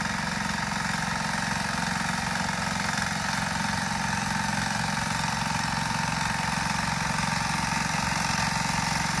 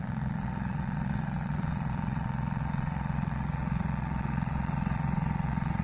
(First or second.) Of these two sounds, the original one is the first